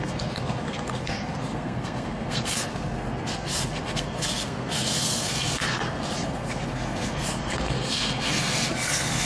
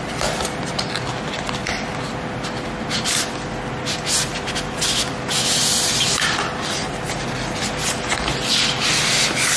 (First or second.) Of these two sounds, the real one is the second